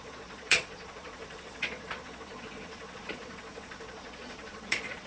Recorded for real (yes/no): no